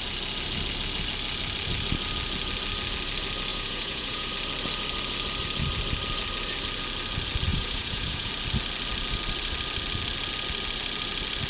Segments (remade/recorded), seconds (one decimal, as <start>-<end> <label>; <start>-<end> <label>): 0.0-3.5 recorded; 3.5-4.3 remade; 4.3-7.5 recorded; 7.5-8.3 remade; 8.3-11.5 recorded